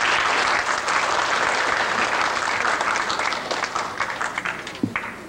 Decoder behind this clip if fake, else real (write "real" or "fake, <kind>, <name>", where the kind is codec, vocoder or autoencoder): real